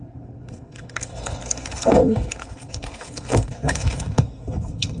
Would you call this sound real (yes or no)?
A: no